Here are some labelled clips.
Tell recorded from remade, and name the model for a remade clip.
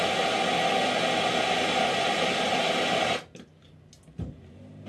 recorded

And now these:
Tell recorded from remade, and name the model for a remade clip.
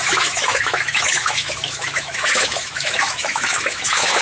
remade, autoencoder, DAC-VAE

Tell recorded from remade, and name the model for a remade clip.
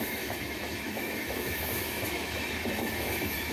remade, autoencoder, DAC-VAE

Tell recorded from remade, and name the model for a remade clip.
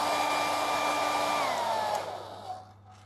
recorded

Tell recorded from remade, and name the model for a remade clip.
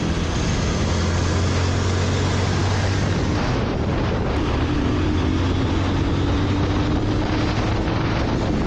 recorded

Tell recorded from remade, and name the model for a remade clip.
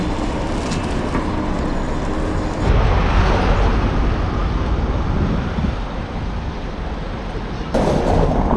recorded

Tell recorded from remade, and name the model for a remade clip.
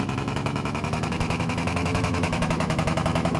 remade, autoencoder, DAC-VAE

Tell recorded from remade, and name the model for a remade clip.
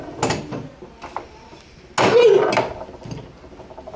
recorded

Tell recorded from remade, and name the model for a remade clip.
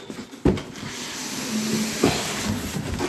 recorded